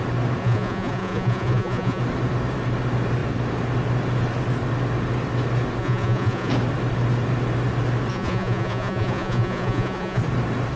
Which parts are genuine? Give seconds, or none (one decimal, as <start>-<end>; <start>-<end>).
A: 0.0-0.4; 2.0-5.8; 6.5-8.1; 10.2-10.8